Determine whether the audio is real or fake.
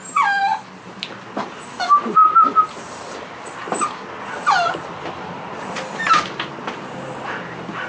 real